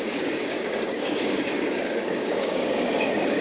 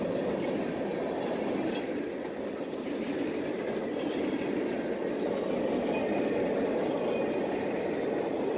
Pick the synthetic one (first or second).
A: first